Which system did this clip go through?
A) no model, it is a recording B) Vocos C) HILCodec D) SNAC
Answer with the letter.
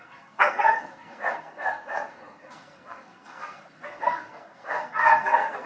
D